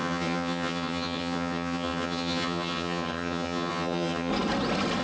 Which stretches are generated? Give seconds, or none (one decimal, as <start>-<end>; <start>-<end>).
0.0-4.3